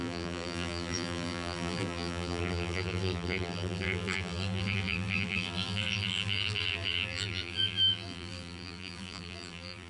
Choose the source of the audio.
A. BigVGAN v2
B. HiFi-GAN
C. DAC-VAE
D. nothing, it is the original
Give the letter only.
A